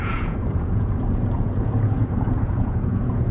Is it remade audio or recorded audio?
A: remade